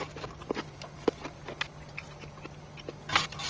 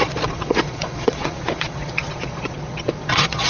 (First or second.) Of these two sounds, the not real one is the second